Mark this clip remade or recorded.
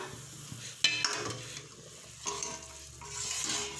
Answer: recorded